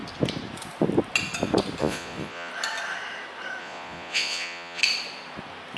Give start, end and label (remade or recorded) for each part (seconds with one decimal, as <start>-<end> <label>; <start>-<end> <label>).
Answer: 0.0-1.8 recorded; 1.8-2.5 remade; 2.5-3.6 recorded; 3.6-4.8 remade; 4.8-5.8 recorded